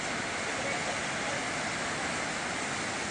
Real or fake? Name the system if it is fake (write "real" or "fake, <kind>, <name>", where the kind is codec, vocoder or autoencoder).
real